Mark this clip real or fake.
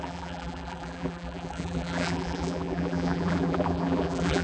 fake